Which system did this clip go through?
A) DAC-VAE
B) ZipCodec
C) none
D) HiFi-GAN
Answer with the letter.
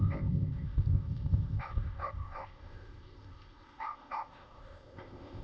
B